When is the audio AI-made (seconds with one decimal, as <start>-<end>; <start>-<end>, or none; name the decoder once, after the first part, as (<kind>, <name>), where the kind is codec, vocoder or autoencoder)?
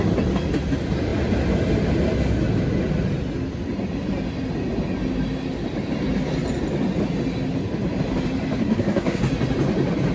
8.6-9.2 (codec, SNAC)